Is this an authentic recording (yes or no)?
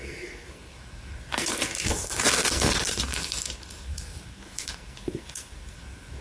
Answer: no